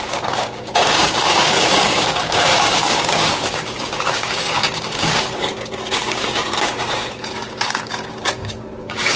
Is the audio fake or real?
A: fake